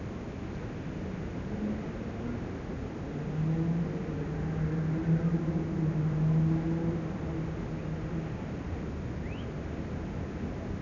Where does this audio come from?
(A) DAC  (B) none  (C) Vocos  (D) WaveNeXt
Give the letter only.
B